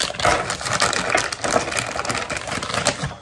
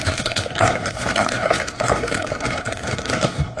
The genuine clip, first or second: first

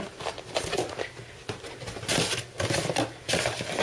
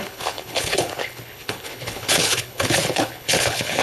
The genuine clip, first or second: first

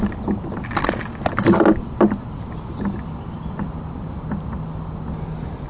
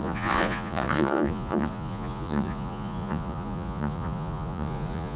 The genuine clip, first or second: first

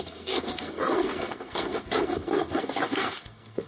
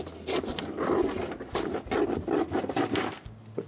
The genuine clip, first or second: second